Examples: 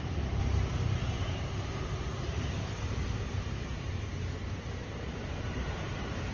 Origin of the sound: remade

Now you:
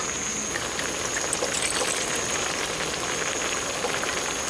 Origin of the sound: recorded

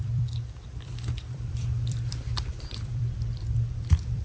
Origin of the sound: remade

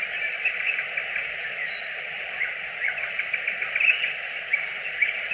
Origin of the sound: remade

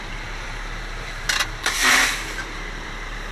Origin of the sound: remade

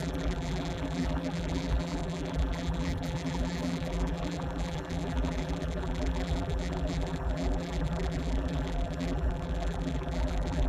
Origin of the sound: remade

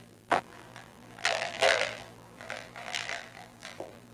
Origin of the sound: remade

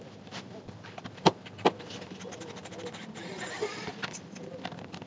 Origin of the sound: remade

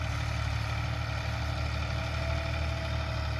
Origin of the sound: recorded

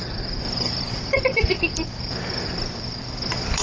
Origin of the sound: remade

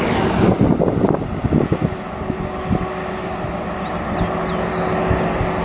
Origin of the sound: recorded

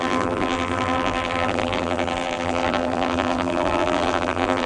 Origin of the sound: remade